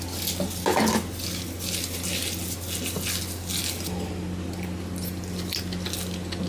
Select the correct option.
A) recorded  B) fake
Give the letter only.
A